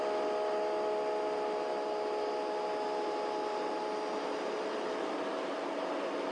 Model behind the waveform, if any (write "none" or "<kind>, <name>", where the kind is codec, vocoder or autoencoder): none